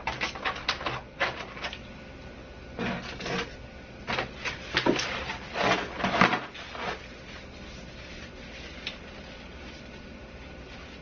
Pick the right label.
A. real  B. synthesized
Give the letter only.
A